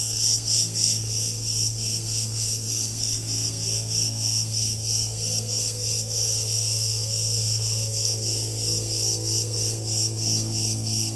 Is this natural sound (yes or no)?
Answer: no